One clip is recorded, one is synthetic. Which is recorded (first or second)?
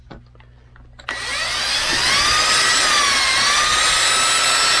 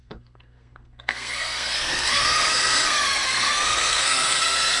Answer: first